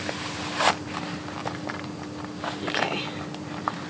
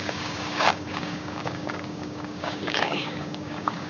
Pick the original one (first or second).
first